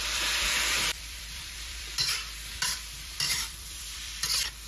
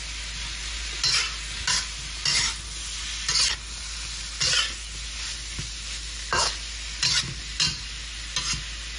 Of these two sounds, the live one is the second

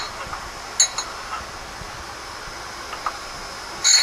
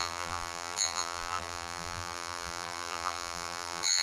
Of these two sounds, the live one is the first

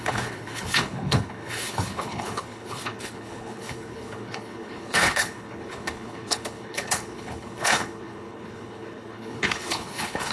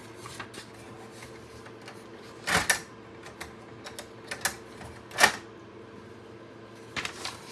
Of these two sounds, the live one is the second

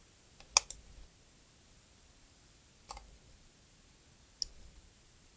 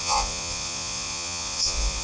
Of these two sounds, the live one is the first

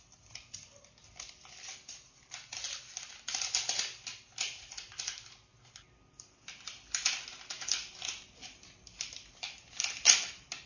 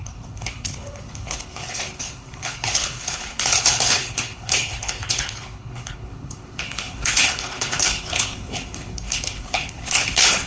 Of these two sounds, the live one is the first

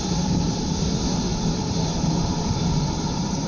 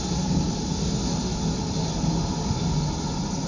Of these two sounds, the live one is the second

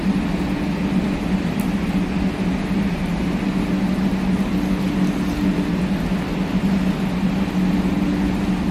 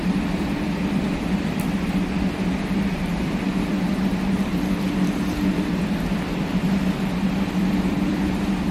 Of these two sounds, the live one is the first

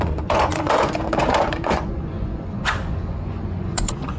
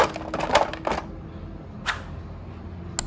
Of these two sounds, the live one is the second